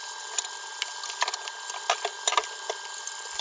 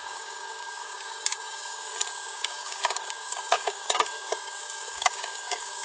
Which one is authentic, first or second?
first